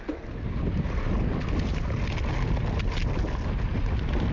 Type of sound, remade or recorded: recorded